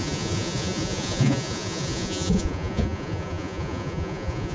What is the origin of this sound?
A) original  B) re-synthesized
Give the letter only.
B